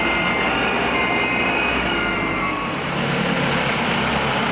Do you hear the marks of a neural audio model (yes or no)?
no